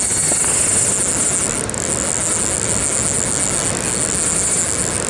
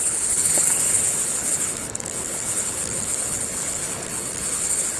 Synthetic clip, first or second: second